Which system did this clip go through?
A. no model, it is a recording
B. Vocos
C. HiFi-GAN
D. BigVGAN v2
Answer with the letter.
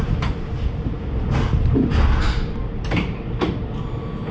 A